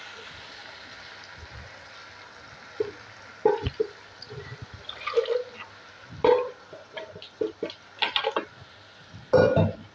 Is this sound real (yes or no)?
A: yes